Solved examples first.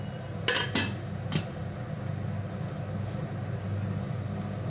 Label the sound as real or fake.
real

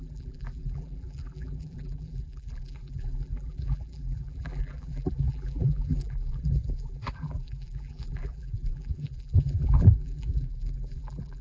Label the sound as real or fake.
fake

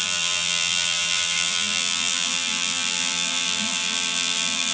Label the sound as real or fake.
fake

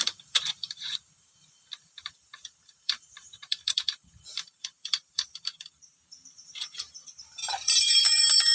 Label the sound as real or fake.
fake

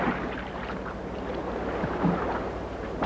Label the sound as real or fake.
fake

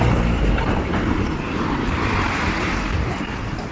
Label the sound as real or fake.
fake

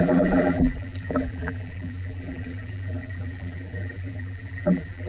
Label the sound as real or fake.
fake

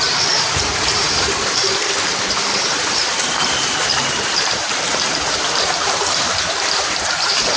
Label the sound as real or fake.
fake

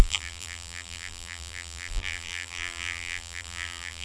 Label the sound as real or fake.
fake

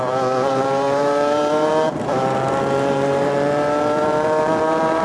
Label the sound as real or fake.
fake